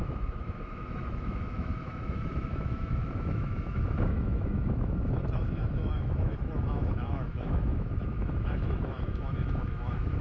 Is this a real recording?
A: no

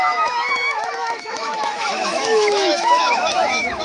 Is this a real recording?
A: no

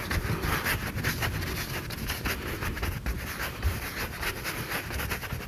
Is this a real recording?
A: yes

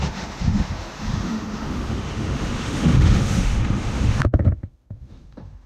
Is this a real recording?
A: no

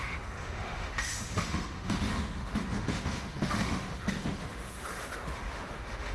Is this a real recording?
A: no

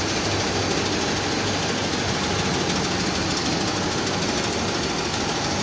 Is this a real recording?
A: yes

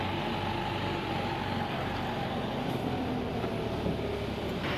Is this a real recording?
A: yes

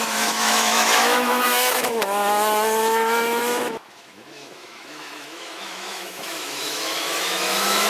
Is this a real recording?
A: no